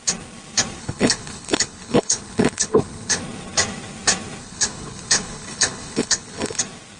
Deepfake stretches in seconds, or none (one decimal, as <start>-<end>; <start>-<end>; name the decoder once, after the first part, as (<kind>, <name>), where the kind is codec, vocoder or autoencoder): 0.8-3.2 (codec, HILCodec); 4.4-6.6